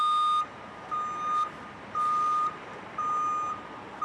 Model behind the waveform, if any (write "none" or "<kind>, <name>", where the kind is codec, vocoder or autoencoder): none